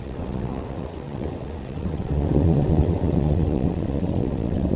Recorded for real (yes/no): no